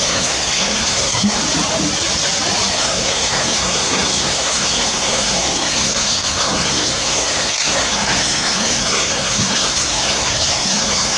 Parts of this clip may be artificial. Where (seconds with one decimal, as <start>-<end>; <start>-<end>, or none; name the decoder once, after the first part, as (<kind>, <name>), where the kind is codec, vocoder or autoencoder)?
0.0-1.4 (codec, SNAC); 2.7-11.2